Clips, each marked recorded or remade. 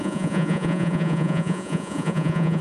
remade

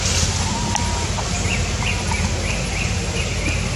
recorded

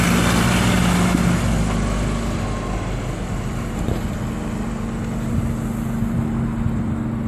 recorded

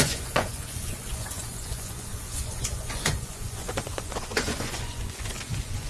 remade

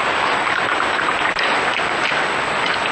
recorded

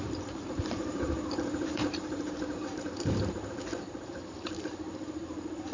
remade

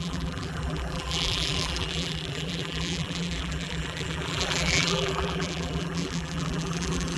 remade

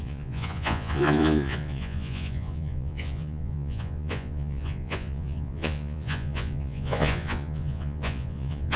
remade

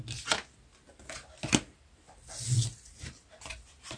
recorded